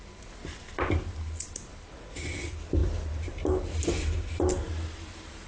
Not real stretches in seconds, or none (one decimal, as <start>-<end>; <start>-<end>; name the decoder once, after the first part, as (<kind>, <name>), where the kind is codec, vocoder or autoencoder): 2.8-3.8 (vocoder, BigVGAN v2); 4.6-5.5